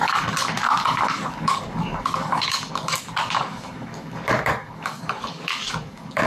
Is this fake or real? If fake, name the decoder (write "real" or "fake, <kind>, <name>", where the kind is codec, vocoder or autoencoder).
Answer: fake, codec, DAC